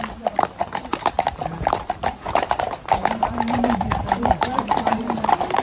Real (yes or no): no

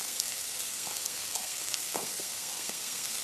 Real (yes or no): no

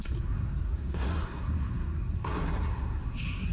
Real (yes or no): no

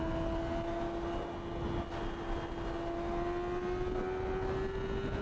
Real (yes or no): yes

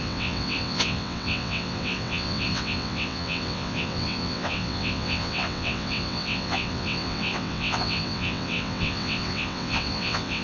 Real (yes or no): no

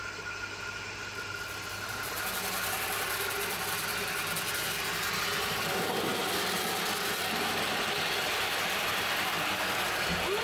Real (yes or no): no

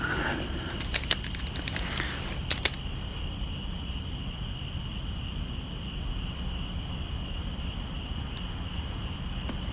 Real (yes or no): yes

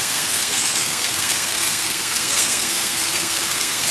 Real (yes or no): no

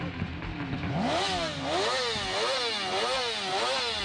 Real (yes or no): yes